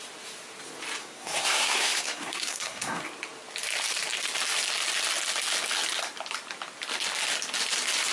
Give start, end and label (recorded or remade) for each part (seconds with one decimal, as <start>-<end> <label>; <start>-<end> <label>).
0.0-1.0 recorded; 1.0-3.0 remade; 3.0-8.1 recorded